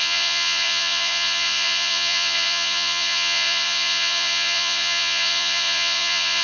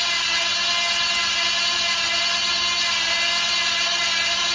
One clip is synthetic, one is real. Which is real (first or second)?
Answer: second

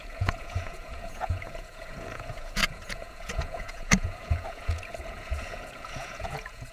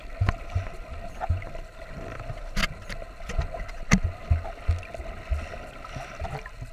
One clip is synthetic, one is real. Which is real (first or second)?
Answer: second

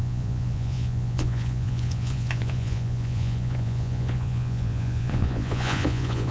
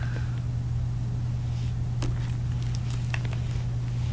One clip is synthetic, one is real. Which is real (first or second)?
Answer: second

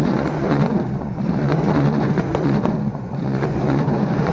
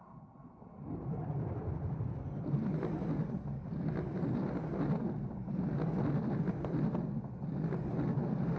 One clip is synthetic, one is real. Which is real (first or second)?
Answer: second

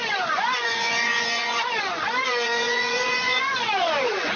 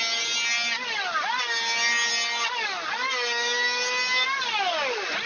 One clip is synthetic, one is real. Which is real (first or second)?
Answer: second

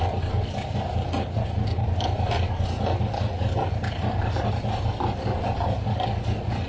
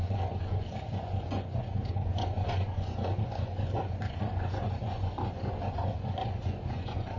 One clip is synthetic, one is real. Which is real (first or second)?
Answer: first